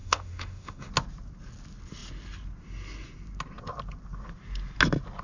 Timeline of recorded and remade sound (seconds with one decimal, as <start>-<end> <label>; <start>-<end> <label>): 0.0-0.9 remade; 0.9-5.2 recorded